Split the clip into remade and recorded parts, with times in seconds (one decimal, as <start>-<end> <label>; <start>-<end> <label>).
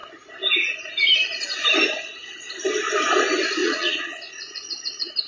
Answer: 0.0-3.6 recorded; 3.6-5.3 remade